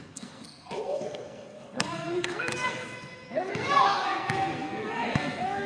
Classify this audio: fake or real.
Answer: fake